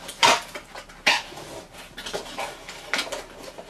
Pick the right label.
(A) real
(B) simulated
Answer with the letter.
A